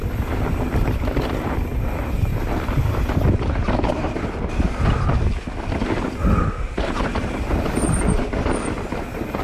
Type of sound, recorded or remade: recorded